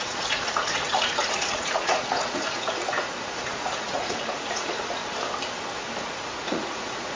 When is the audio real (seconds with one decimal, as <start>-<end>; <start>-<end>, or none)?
5.0-6.2